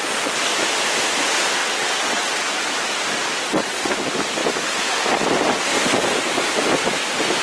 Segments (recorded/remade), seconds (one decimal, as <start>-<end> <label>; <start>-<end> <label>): 0.0-1.6 recorded; 1.6-2.5 remade; 2.5-3.4 recorded; 3.4-3.9 remade; 3.9-7.4 recorded